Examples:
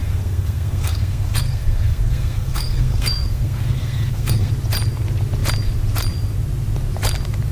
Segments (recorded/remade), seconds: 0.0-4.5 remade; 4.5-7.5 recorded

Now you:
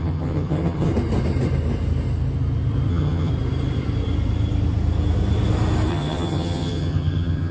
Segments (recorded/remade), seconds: 0.0-0.9 remade; 0.9-2.9 recorded; 2.9-3.3 remade; 3.3-5.9 recorded; 5.9-7.5 remade

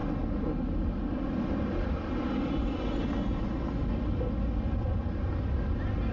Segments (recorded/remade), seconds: 0.0-6.1 recorded

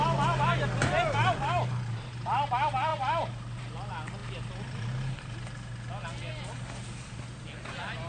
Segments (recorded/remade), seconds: 0.0-8.1 recorded

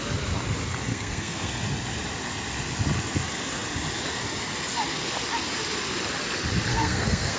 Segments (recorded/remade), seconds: 0.0-0.9 recorded; 0.9-1.5 remade; 1.5-6.7 recorded; 6.7-7.4 remade

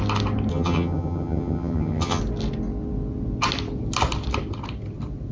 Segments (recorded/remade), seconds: 0.0-0.5 recorded; 0.5-2.2 remade; 2.2-5.3 recorded